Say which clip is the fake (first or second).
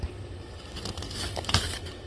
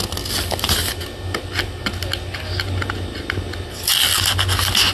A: first